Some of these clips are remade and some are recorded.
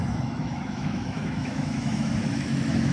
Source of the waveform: remade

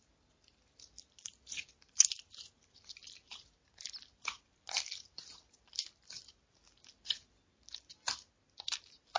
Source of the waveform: recorded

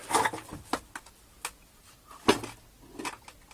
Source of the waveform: recorded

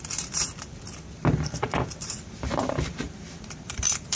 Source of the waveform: remade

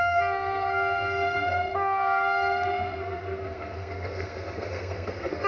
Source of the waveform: remade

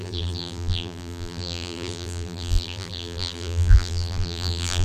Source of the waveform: remade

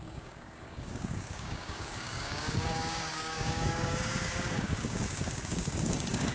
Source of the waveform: remade